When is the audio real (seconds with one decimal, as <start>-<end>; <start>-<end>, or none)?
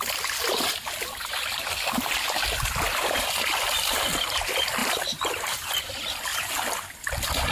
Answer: 0.0-4.8; 5.7-6.3; 7.0-7.5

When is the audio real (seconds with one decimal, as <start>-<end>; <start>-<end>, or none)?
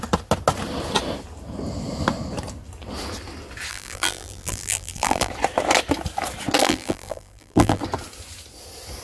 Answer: 0.0-3.7; 5.3-6.6; 7.8-9.0